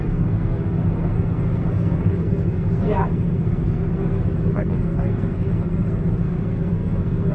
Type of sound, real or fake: fake